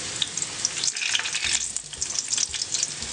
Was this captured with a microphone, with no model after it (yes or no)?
yes